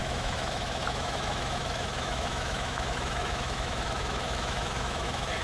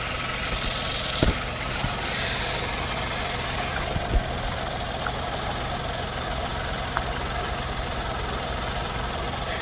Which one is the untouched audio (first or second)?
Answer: second